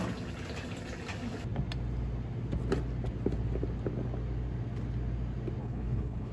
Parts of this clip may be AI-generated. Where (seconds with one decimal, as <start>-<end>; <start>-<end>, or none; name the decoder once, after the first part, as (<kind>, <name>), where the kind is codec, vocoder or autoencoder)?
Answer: 5.6-6.3 (codec, HILCodec)